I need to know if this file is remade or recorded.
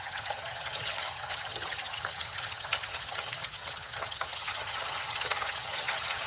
remade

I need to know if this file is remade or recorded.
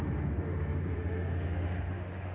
remade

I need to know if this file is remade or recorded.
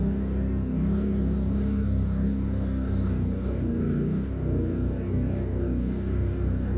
remade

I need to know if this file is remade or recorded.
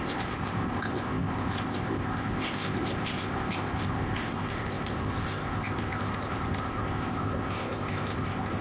remade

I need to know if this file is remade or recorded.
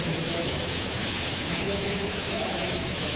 remade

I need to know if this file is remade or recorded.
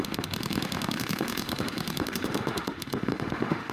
remade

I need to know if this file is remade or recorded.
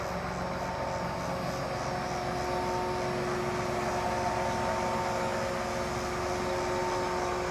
recorded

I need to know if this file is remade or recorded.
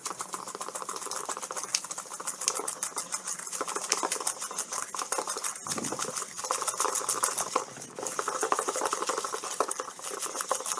recorded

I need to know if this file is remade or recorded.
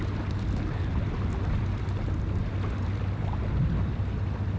recorded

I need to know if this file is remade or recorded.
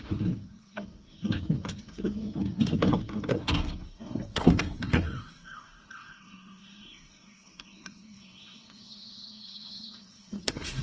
remade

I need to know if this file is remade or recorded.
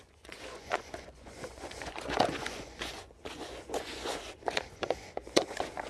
remade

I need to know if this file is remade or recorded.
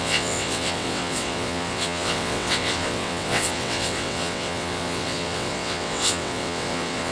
remade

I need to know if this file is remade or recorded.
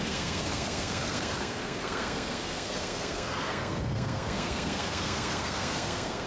remade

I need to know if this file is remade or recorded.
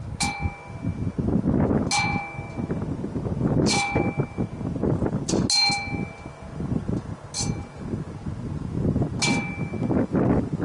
recorded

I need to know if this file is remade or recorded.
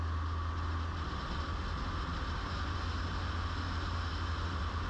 recorded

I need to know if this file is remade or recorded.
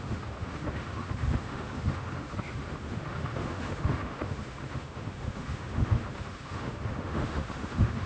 remade